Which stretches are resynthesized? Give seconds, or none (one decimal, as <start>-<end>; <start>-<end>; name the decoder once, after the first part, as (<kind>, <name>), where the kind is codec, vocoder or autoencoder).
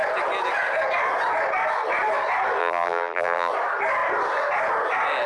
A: 2.6-3.5 (vocoder, BigVGAN v2)